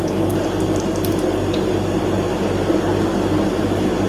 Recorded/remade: recorded